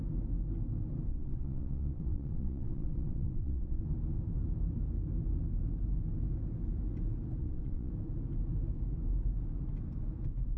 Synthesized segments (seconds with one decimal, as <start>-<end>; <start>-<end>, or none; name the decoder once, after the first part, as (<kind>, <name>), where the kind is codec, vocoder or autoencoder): 1.1-3.8 (vocoder, WaveNeXt); 7.4-7.9